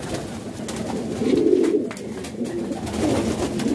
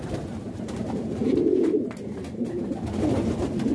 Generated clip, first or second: second